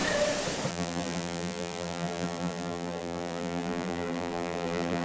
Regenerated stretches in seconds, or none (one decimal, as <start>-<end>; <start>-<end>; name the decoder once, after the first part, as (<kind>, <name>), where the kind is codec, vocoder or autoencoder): 0.7-5.0 (vocoder, BigVGAN v2)